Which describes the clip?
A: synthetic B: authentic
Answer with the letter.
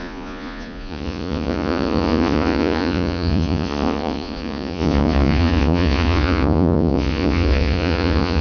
A